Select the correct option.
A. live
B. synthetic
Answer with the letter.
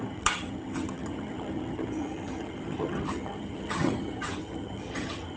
B